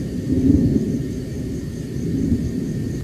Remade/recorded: recorded